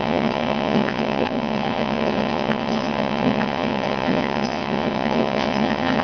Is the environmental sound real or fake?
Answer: fake